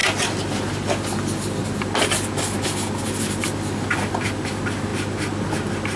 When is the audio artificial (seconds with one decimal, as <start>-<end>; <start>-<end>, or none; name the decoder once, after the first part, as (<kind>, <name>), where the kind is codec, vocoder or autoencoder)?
none